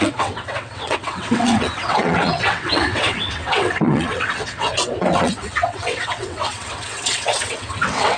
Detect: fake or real fake